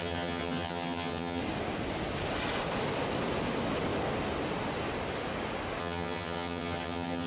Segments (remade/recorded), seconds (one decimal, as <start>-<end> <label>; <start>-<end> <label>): 0.0-1.4 remade; 1.4-5.8 recorded; 5.8-7.3 remade